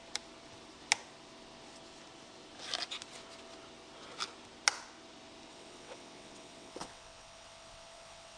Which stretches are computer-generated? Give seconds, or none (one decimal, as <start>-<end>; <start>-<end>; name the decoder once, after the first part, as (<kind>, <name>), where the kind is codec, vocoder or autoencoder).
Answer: 5.5-8.4 (vocoder, WaveNeXt)

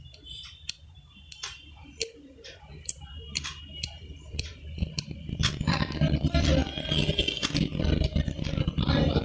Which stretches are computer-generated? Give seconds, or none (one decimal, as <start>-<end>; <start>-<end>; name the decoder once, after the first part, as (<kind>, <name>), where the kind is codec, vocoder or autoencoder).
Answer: 0.0-6.6 (vocoder, BigVGAN v2); 7.2-9.2

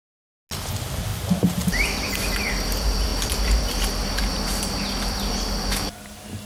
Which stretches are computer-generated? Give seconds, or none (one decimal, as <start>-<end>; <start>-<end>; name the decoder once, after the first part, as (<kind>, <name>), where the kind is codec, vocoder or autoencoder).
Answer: none

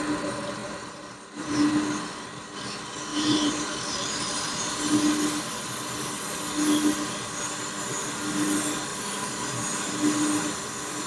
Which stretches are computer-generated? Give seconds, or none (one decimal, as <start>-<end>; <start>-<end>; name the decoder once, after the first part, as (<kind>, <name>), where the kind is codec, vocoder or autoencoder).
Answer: 0.6-1.7 (vocoder, BigVGAN v2); 3.1-4.9

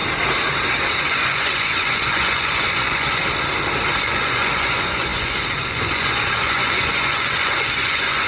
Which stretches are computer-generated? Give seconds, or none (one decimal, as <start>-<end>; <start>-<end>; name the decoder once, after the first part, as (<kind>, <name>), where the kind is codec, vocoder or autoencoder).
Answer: 1.0-3.2 (vocoder, Vocos); 4.0-8.3

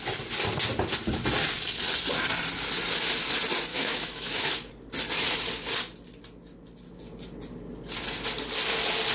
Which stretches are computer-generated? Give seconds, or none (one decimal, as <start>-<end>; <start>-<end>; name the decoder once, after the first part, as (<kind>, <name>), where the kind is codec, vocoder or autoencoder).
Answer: 3.7-4.7 (autoencoder, DAC-VAE)

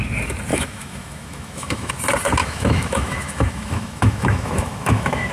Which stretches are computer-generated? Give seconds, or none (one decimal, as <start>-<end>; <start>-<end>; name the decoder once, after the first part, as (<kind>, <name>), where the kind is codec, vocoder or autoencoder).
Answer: 0.5-1.9 (autoencoder, DAC-VAE); 2.4-5.3